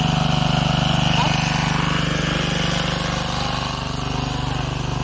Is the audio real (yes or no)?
yes